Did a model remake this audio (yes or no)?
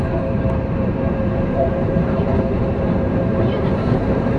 yes